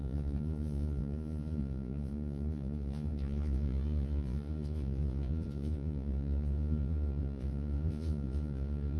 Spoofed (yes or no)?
yes